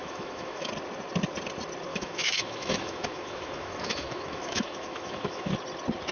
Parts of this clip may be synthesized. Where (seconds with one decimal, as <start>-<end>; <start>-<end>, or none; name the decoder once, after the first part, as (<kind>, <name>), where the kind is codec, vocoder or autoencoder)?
0.0-0.7 (autoencoder, DAC-VAE); 1.9-5.5